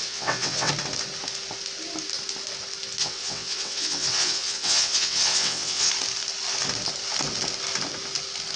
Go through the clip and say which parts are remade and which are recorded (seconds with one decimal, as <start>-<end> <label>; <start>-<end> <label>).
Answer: 0.0-0.7 remade; 0.7-3.0 recorded; 3.0-5.9 remade; 5.9-8.6 recorded